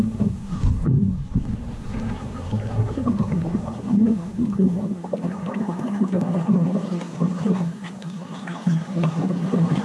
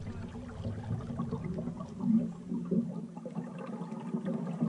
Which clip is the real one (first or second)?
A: second